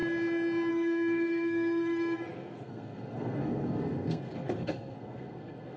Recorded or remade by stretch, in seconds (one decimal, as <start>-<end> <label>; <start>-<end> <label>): 0.0-0.7 recorded; 0.7-5.8 remade